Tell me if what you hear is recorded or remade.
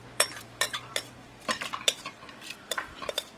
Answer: remade